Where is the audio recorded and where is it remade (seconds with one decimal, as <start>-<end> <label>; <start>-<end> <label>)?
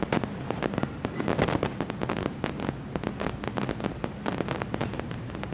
0.0-1.3 remade; 1.3-4.6 recorded; 4.6-5.5 remade